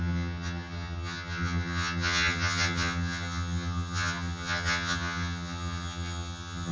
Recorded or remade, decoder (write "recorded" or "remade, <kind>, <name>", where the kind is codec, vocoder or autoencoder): remade, vocoder, HiFi-GAN